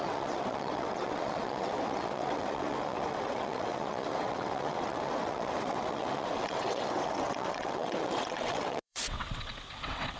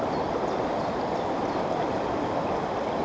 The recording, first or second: second